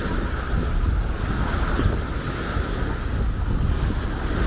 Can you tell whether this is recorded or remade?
recorded